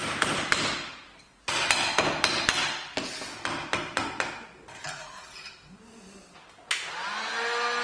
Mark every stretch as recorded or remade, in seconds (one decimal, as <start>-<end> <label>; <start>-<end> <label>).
0.0-4.8 recorded; 4.8-5.3 remade; 5.3-7.8 recorded